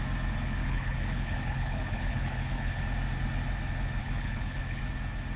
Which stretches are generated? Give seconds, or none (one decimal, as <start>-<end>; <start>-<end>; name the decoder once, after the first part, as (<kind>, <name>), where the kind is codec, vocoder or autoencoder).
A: 0.6-2.8 (codec, HILCodec); 4.0-4.8